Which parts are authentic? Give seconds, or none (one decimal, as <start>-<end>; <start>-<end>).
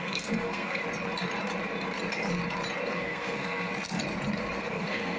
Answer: 0.8-2.9; 3.7-4.6